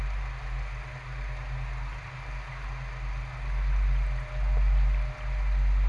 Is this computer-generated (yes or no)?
no